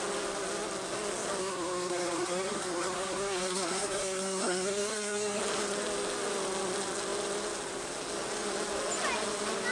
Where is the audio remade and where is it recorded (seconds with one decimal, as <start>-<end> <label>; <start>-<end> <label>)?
0.0-1.4 recorded; 1.4-5.4 remade; 5.4-9.7 recorded